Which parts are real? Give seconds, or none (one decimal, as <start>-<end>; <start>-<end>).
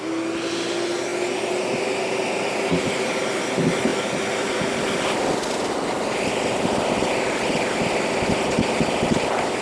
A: 0.0-9.6